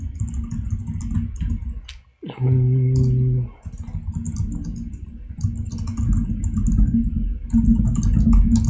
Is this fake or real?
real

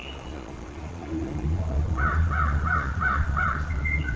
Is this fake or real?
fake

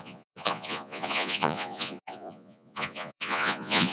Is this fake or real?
fake